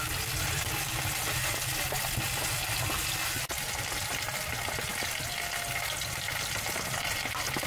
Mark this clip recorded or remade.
recorded